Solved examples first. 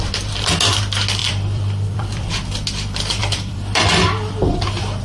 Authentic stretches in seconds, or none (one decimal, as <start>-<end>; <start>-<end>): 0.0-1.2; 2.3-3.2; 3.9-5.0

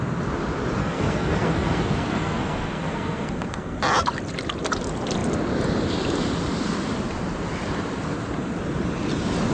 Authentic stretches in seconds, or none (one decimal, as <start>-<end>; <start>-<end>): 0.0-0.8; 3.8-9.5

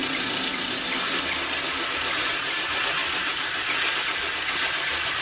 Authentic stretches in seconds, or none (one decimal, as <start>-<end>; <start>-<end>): 0.0-5.2

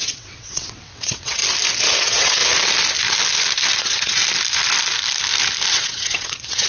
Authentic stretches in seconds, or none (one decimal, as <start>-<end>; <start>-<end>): 1.4-2.0; 2.4-3.8; 4.2-5.7

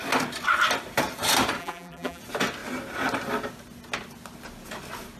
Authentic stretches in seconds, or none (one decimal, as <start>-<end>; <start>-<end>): 0.0-1.6; 2.2-5.2